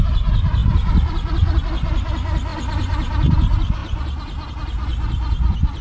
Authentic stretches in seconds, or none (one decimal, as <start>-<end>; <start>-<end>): 0.0-5.8